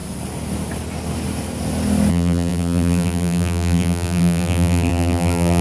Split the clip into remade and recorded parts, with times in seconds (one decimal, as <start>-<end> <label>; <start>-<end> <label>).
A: 0.0-2.1 recorded; 2.1-5.6 remade

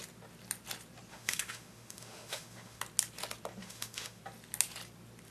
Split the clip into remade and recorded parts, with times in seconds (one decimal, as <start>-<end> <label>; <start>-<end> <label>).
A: 0.0-1.1 recorded; 1.1-2.8 remade; 2.8-3.6 recorded; 3.6-4.2 remade; 4.2-5.3 recorded

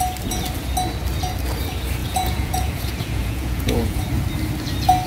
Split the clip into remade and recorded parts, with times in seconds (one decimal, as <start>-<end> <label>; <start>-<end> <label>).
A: 0.0-2.0 recorded; 2.0-4.0 remade; 4.0-5.1 recorded